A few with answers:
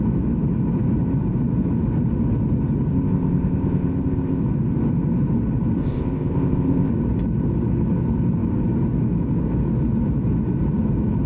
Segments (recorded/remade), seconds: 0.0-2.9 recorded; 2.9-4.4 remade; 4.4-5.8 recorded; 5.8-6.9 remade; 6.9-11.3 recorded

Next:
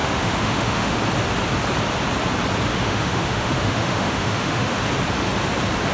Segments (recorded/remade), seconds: 0.0-1.0 remade; 1.0-2.7 recorded; 2.7-4.8 remade; 4.8-5.9 recorded

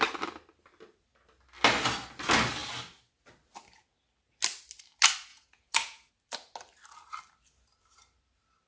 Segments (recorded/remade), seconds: 0.0-5.3 recorded; 5.3-6.1 remade; 6.1-8.7 recorded

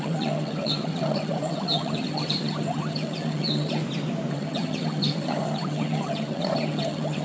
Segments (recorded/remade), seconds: 0.0-3.8 remade; 3.8-4.3 recorded; 4.3-7.2 remade

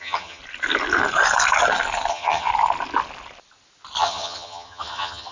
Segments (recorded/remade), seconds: 0.0-0.4 remade; 0.4-2.1 recorded; 2.1-2.5 remade; 2.5-4.0 recorded; 4.0-5.3 remade

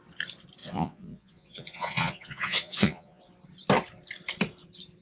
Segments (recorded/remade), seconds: 0.0-0.6 recorded; 0.6-3.2 remade; 3.2-5.0 recorded